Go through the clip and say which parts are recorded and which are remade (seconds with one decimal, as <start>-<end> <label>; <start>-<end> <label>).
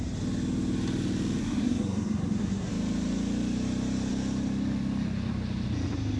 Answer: 0.0-1.4 recorded; 1.4-2.7 remade; 2.7-6.2 recorded